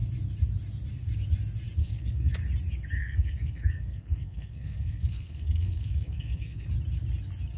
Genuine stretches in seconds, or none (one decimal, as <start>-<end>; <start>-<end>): 0.0-1.8; 2.3-3.0; 6.7-7.6